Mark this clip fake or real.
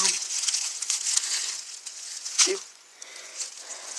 fake